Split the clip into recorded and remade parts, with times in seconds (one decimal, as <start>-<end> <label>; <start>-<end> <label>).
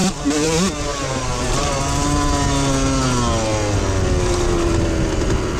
0.0-0.5 remade; 0.5-0.9 recorded; 0.9-1.7 remade; 1.7-5.6 recorded